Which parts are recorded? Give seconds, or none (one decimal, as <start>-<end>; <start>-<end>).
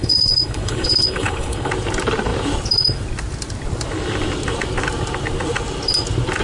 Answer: 1.7-6.4